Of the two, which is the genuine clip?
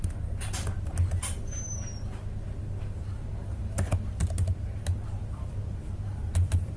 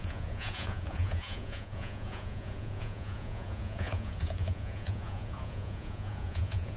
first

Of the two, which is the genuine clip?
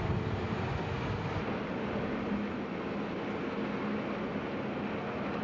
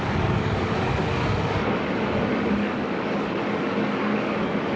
first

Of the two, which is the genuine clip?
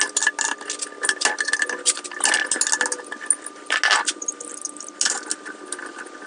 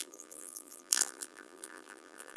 first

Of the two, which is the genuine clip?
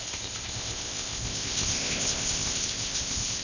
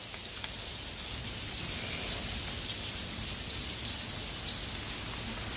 second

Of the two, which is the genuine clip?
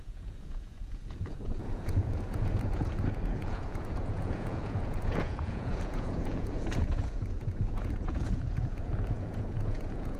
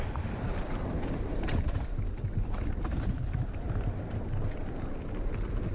second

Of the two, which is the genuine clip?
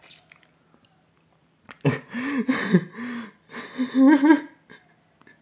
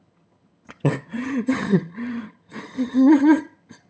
first